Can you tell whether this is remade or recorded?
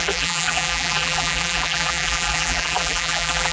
remade